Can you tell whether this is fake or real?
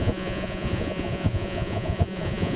fake